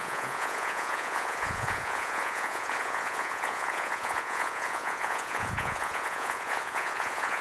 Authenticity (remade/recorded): remade